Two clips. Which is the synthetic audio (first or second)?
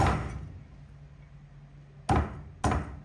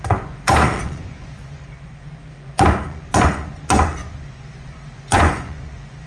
second